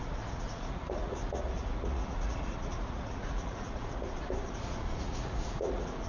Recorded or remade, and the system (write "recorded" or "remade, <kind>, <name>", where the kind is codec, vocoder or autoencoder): remade, vocoder, Vocos